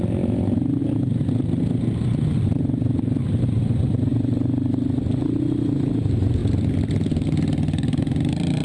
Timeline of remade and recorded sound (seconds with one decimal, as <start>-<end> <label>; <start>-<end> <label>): 0.0-8.6 recorded